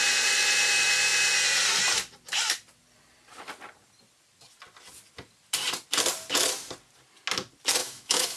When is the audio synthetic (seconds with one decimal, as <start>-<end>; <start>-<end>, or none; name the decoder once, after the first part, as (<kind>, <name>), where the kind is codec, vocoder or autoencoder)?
7.8-8.4 (autoencoder, DAC-VAE)